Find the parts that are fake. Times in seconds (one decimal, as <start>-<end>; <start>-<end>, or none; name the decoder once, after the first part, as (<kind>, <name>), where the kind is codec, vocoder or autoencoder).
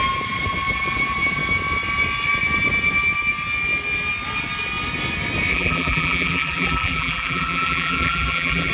5.5-8.7 (vocoder, BigVGAN v2)